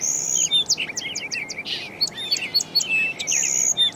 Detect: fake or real real